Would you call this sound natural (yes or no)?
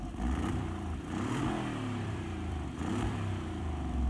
no